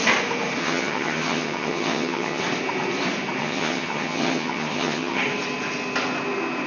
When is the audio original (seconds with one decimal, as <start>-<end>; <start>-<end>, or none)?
0.0-0.6; 2.4-3.4; 5.2-6.7